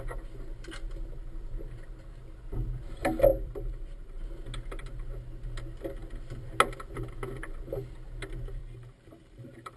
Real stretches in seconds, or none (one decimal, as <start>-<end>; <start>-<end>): 0.0-3.3; 4.2-8.6